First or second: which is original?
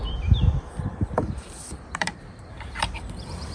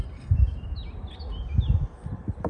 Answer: second